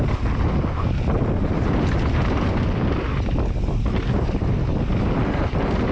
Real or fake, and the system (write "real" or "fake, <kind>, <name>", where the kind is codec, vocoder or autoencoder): real